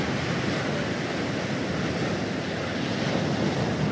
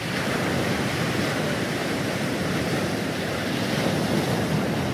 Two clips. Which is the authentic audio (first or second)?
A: first